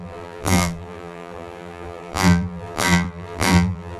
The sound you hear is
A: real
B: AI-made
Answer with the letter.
B